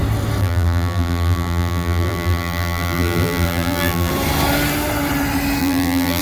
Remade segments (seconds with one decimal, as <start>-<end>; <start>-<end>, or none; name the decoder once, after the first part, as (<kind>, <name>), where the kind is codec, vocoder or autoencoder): 0.4-4.1 (vocoder, BigVGAN v2); 5.6-6.2